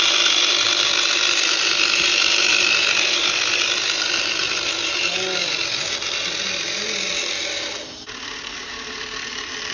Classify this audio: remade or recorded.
recorded